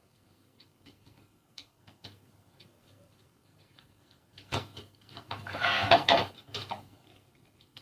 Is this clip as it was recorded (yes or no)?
no